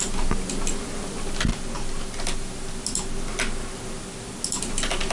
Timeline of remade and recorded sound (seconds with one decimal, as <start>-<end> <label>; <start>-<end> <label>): 0.0-5.1 recorded